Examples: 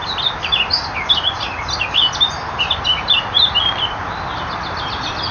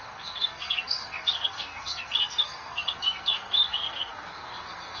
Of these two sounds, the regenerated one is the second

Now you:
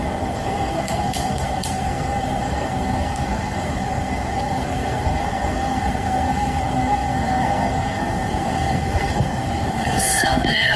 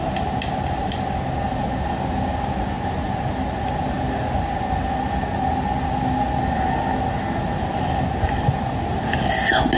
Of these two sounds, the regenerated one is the first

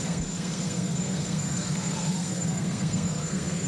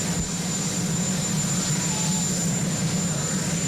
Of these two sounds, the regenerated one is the first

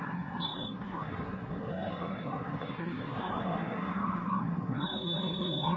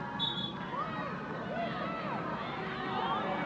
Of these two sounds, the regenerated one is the first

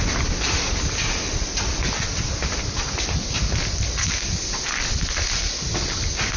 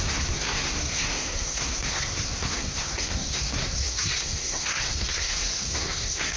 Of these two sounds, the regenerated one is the second